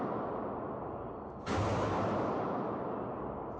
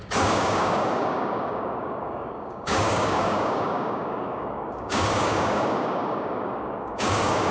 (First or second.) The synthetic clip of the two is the second